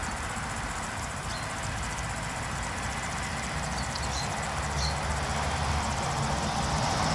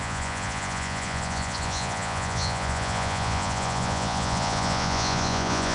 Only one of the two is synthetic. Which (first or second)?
second